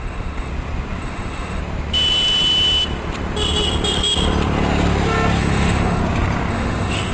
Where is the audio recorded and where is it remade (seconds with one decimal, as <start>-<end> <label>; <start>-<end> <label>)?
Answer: 0.0-0.5 remade; 0.5-1.0 recorded; 1.0-1.6 remade; 1.6-5.4 recorded; 5.4-6.0 remade; 6.0-6.5 recorded; 6.5-7.1 remade